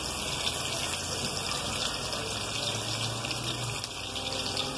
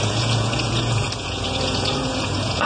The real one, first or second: first